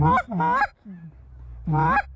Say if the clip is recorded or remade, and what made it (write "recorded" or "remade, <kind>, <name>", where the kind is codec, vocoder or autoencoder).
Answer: recorded